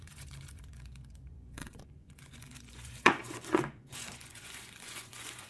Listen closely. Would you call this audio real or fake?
fake